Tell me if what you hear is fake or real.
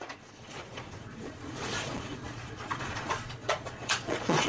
fake